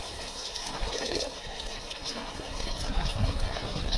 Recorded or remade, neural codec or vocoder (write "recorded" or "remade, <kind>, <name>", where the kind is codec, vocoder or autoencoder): remade, codec, SNAC